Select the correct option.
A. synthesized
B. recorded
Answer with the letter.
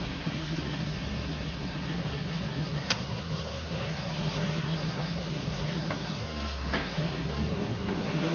A